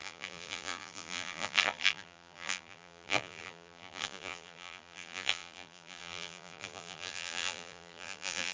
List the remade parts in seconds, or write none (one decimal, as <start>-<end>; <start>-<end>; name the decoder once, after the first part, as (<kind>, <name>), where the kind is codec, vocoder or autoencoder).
0.0-8.5 (vocoder, BigVGAN v2)